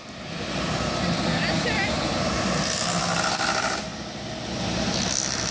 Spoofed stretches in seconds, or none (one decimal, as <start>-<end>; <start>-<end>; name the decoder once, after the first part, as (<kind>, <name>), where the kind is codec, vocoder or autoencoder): 0.0-3.9 (vocoder, BigVGAN v2); 4.5-5.5